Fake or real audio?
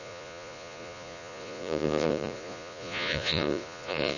fake